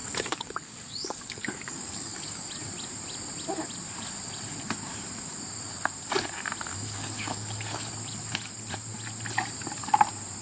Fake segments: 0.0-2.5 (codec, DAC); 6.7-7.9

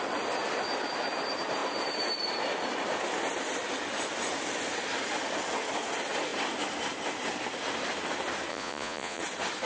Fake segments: 8.5-9.2 (vocoder, Vocos)

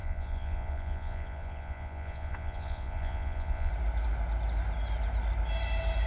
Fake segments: 0.0-3.7 (vocoder, Vocos)

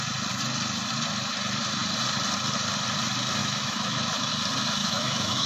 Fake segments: 3.4-4.3 (autoencoder, DAC-VAE); 4.8-5.5

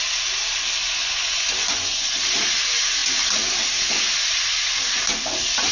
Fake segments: 0.8-2.2 (vocoder, Vocos)

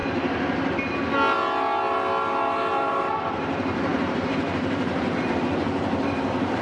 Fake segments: 2.9-6.6 (vocoder, BigVGAN v2)